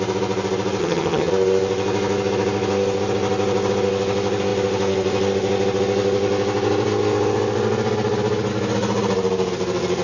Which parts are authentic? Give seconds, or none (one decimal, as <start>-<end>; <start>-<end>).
0.0-0.8; 1.3-10.0